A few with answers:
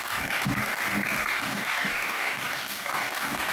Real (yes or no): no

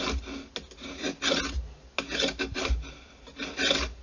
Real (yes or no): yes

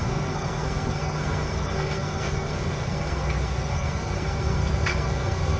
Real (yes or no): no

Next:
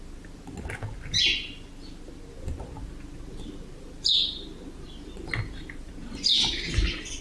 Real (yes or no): yes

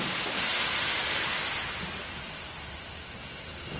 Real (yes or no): yes